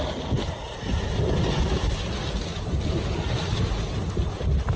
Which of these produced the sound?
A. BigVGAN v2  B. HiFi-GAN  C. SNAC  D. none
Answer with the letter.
D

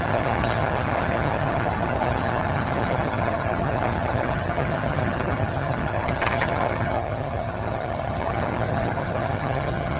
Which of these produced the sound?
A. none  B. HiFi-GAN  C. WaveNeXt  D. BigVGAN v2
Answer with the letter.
B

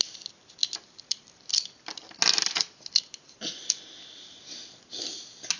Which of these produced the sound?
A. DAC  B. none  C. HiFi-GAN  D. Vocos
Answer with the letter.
B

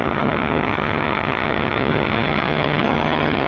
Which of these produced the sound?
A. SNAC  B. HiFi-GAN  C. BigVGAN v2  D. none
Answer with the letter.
B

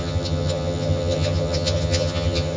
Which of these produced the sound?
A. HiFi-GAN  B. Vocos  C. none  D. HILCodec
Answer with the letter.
A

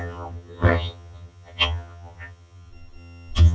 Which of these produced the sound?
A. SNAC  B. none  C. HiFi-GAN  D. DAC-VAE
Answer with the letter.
C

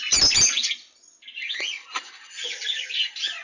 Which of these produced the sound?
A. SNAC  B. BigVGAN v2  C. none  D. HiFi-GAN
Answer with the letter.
C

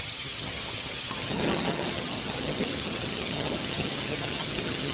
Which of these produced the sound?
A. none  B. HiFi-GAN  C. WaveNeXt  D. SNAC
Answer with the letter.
B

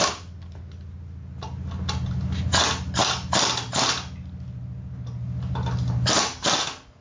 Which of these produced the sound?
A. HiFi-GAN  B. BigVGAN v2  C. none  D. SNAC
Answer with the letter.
C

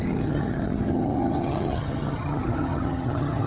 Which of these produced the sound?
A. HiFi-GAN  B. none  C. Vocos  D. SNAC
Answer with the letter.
A